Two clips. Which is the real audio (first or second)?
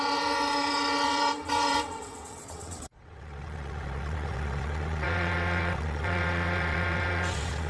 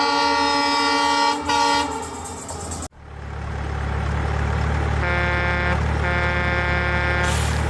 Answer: second